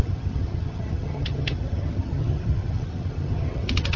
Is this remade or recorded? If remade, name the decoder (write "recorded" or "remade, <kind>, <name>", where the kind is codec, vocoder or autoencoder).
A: remade, vocoder, HiFi-GAN